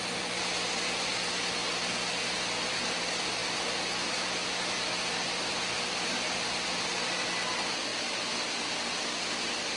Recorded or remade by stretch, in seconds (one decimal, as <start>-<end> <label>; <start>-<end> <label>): 0.0-9.8 recorded